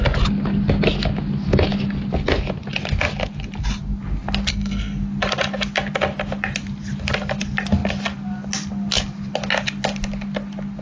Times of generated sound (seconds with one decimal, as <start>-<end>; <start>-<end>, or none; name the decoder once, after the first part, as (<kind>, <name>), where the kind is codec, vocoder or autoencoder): 4.5-5.0 (codec, SNAC)